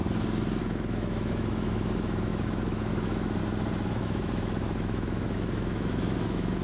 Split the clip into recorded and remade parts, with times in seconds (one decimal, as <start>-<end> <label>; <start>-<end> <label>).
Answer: 0.0-0.6 recorded; 0.6-3.4 remade; 3.4-3.9 recorded; 3.9-6.6 remade